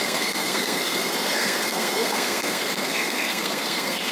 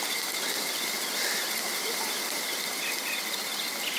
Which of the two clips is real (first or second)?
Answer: second